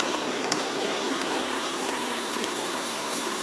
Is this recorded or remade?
remade